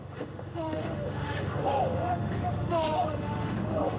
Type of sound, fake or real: fake